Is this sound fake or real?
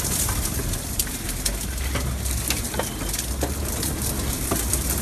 real